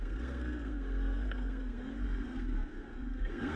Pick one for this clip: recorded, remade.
remade